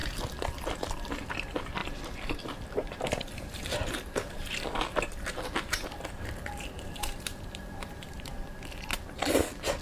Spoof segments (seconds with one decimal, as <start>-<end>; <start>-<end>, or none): 1.1-9.8